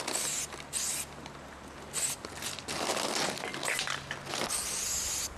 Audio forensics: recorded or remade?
recorded